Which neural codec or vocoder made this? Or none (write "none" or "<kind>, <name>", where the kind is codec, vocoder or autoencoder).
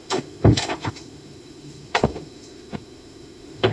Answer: autoencoder, DAC-VAE